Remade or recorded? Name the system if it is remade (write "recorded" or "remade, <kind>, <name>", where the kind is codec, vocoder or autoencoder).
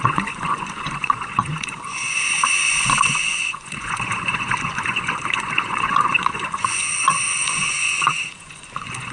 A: remade, vocoder, Vocos